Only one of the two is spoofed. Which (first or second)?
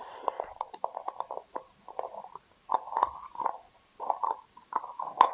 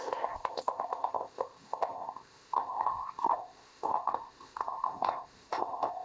second